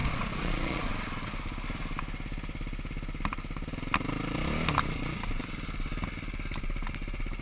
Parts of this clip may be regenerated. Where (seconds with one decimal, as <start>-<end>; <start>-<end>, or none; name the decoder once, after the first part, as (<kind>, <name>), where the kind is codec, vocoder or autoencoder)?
0.0-0.9 (vocoder, Vocos)

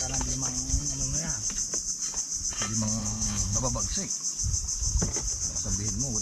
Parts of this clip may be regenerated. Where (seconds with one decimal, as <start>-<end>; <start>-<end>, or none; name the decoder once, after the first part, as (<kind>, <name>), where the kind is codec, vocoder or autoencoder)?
3.0-3.6 (codec, HILCodec)

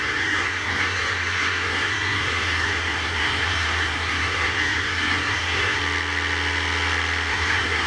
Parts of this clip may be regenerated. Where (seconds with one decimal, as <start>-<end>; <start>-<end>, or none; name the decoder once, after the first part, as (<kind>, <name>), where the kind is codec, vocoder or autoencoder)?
0.0-5.8 (codec, SNAC); 7.3-7.9

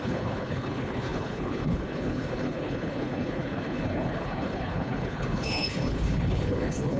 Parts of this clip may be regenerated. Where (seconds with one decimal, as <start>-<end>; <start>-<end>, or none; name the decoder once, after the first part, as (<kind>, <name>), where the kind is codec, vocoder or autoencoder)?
0.0-7.0 (codec, HILCodec)

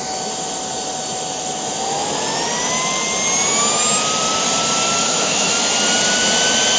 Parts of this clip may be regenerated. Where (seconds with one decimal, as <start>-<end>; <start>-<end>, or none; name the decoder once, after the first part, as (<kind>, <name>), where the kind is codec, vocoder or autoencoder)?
5.0-5.5 (autoencoder, DAC-VAE)